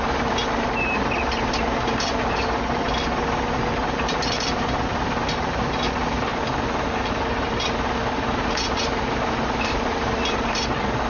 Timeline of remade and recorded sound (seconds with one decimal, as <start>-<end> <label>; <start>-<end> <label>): 0.0-11.1 remade